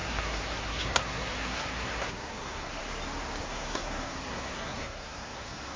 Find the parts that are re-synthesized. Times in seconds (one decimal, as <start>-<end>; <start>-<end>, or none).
0.0-2.8; 3.4-5.8